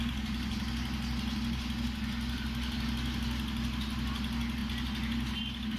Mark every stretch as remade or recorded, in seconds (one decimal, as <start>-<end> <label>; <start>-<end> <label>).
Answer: 0.0-5.8 recorded